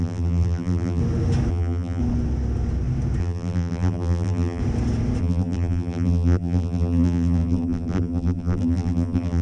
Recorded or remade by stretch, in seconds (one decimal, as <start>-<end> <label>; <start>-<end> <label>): 0.0-1.0 remade; 1.0-1.5 recorded; 1.5-2.0 remade; 2.0-3.2 recorded; 3.2-4.6 remade; 4.6-5.2 recorded; 5.2-9.4 remade